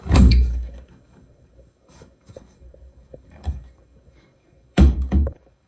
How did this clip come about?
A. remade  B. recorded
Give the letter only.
A